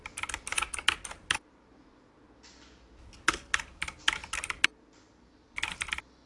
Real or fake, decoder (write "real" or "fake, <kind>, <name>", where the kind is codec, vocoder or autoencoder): real